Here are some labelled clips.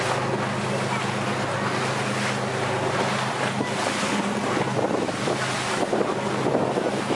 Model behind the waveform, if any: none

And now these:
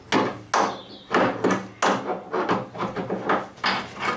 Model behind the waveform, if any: none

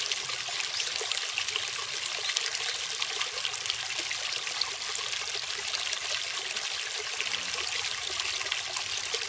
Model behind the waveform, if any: none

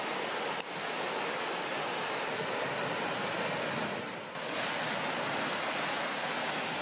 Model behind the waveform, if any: none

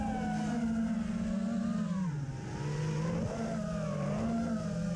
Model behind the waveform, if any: none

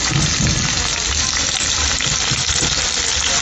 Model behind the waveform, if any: none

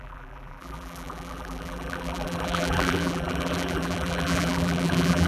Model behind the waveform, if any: vocoder, BigVGAN v2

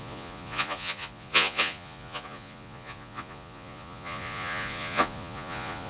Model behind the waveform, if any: vocoder, Vocos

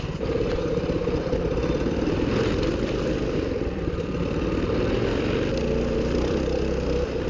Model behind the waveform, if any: vocoder, BigVGAN v2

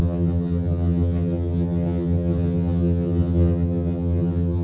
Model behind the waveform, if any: vocoder, HiFi-GAN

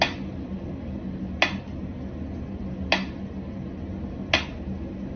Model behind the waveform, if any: none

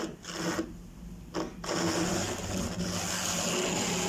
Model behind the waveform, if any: none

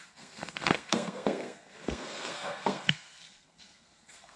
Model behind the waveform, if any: codec, SNAC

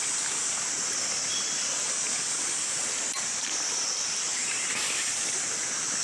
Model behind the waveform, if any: none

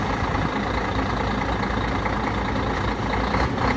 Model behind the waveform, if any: none